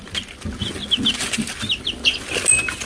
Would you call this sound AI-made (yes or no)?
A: no